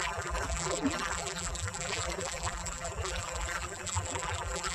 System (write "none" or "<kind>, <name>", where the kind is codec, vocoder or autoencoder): vocoder, BigVGAN v2